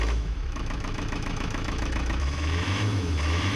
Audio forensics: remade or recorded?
remade